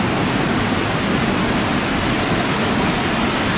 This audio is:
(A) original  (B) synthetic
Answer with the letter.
A